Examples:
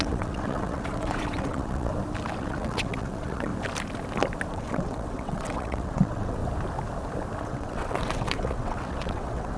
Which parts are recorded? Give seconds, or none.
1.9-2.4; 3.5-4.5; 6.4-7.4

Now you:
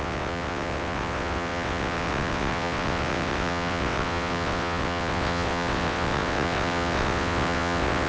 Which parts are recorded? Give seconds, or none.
none

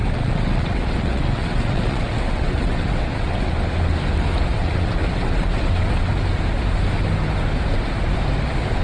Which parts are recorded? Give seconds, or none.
3.5-4.5; 6.1-8.8